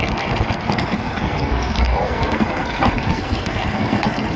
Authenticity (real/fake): fake